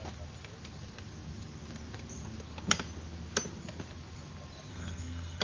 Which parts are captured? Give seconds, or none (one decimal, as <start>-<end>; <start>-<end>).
0.0-4.7